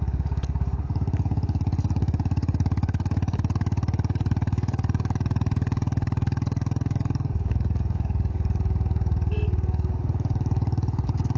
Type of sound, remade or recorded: remade